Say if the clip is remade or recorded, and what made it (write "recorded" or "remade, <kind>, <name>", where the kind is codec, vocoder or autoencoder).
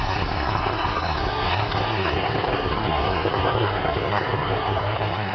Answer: remade, codec, SNAC